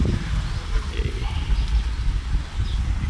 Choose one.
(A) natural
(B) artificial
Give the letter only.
A